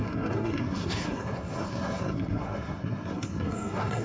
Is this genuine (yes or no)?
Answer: no